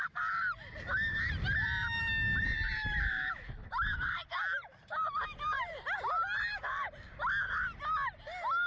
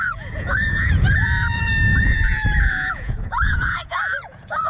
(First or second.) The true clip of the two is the first